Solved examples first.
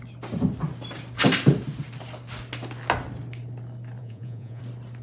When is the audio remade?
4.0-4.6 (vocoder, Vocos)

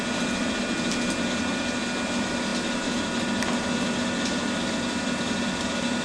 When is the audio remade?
none